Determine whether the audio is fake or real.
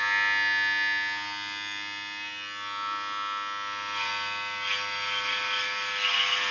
real